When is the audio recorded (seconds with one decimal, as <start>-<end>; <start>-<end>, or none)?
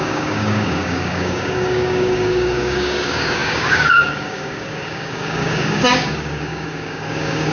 none